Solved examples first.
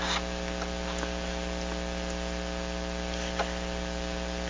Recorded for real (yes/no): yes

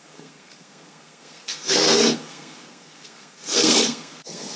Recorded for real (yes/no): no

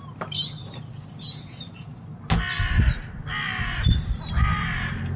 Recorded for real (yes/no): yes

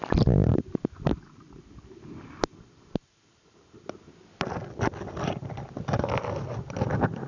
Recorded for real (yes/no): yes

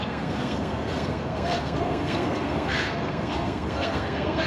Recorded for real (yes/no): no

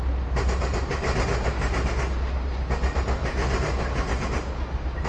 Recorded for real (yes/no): yes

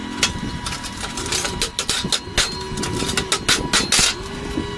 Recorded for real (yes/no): yes